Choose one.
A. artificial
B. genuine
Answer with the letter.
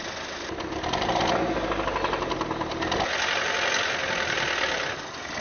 B